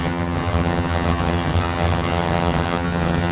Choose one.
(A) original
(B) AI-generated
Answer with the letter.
B